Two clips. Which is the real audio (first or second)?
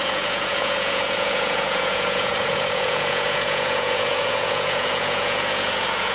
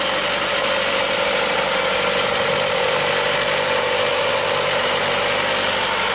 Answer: second